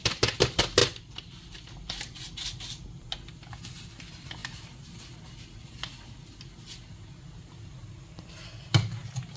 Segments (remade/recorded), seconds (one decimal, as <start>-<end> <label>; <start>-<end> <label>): 0.0-9.4 recorded